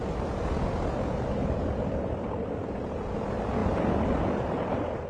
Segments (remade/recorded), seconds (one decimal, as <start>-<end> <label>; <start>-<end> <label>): 0.0-5.1 recorded